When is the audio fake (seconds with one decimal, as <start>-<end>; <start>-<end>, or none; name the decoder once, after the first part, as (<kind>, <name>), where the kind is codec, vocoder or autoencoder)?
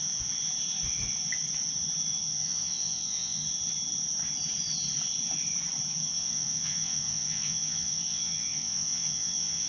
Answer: 2.2-3.4 (vocoder, WaveNeXt); 6.0-9.7